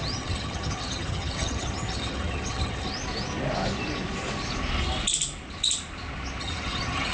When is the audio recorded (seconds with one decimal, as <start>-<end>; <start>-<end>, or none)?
2.9-6.4